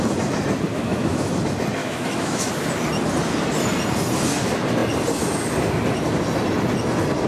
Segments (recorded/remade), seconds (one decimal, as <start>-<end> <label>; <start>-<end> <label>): 0.0-0.7 recorded; 0.7-1.3 remade; 1.3-1.8 recorded; 1.8-2.5 remade; 2.5-7.3 recorded